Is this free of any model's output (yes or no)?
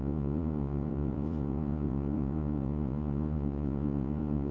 no